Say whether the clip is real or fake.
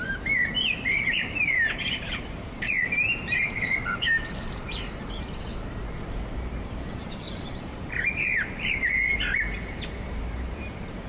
fake